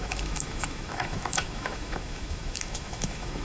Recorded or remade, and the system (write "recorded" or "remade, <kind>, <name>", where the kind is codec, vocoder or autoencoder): remade, autoencoder, DAC-VAE